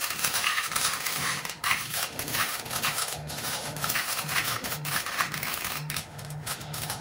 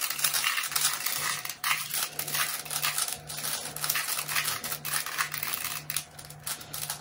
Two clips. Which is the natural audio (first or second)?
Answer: second